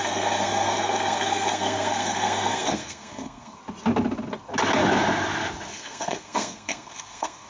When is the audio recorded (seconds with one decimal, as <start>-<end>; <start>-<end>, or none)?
3.6-5.7